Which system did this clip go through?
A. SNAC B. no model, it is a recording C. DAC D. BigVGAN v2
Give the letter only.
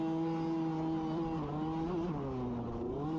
B